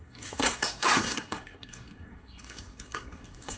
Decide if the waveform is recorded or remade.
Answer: remade